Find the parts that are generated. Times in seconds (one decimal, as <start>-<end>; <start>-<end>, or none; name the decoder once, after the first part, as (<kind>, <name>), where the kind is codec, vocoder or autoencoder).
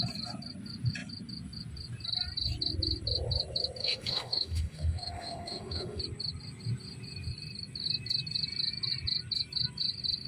3.8-6.0 (autoencoder, DAC-VAE)